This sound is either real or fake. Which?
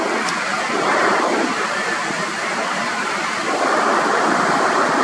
real